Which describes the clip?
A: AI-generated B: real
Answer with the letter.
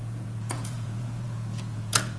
A